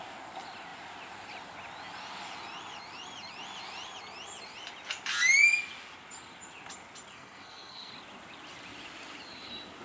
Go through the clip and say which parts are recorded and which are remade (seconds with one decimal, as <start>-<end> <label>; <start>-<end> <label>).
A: 0.0-7.1 recorded; 7.1-7.9 remade; 7.9-9.8 recorded